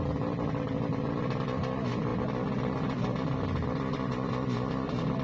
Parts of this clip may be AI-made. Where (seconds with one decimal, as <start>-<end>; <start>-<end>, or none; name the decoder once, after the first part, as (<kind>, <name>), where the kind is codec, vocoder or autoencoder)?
none